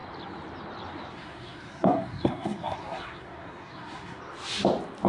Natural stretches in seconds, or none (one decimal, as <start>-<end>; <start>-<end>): 0.0-1.1; 4.2-5.1